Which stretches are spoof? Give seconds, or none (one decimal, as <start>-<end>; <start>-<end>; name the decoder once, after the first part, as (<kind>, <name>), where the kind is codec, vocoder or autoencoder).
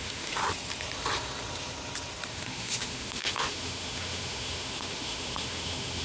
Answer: 0.0-0.4 (autoencoder, DAC-VAE); 2.3-6.0